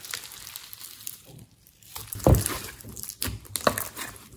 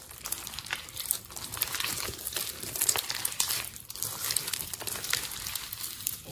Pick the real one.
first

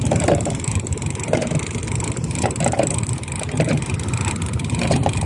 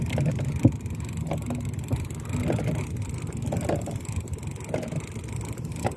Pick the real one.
second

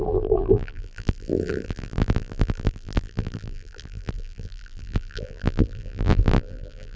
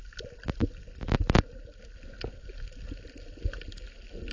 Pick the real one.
second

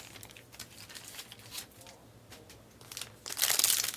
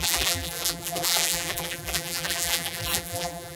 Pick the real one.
first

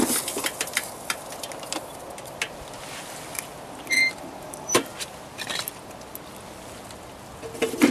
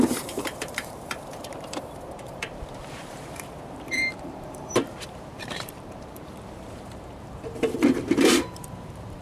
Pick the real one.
first